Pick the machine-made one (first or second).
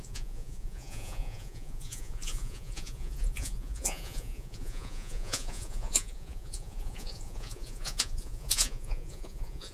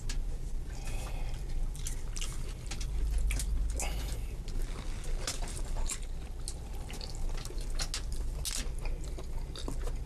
first